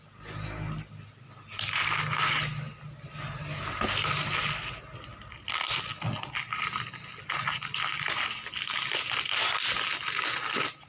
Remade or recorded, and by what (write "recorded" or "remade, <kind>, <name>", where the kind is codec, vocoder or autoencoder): recorded